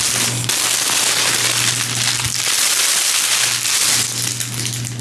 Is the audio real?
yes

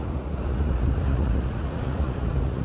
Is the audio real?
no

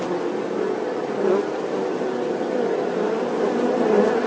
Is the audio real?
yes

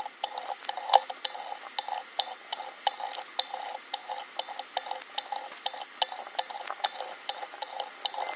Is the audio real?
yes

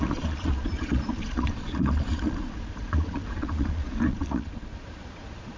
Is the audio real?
no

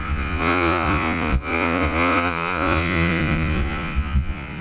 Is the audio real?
no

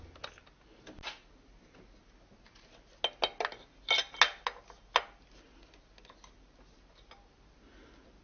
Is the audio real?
yes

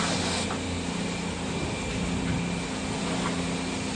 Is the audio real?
yes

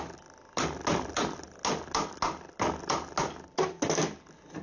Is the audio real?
yes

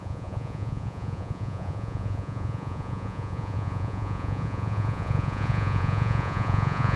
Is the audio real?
no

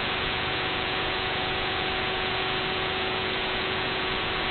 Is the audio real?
no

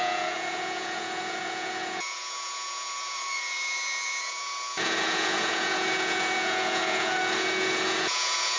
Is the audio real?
no